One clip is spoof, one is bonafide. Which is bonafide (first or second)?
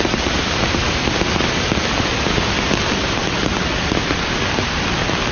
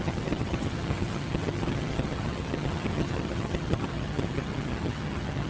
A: first